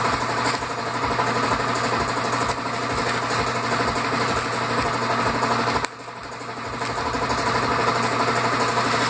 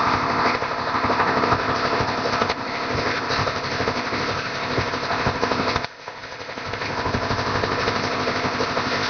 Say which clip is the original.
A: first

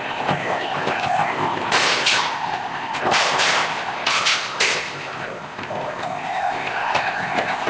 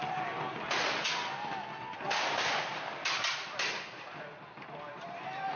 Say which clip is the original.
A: second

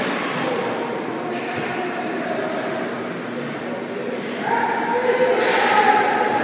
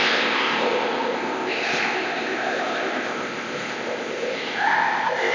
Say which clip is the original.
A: first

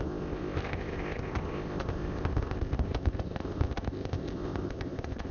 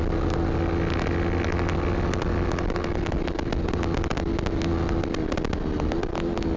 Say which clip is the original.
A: second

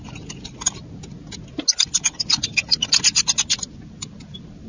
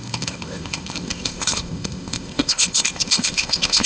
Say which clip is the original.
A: first